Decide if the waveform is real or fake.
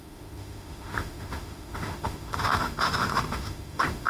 fake